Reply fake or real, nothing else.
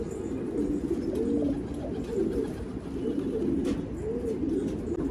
real